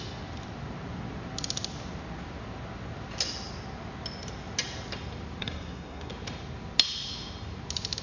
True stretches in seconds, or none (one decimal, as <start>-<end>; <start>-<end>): 0.0-5.4; 6.1-8.0

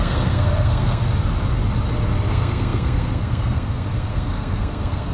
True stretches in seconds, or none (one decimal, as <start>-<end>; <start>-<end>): 1.0-2.3

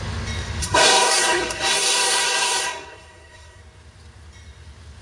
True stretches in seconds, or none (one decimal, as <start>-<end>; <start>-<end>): 0.0-0.6; 3.6-5.0